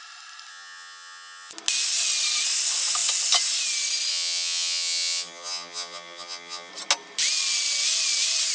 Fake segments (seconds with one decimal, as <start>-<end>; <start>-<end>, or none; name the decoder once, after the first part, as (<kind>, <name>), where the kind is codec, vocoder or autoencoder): 0.5-1.5 (vocoder, HiFi-GAN); 4.1-6.7